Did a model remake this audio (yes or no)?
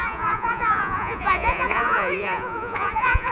yes